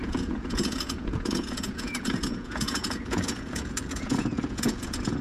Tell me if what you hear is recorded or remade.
remade